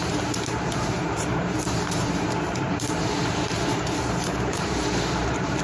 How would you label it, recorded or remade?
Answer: remade